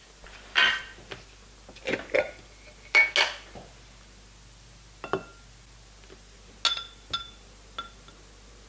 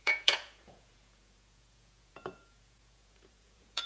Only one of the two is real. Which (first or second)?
first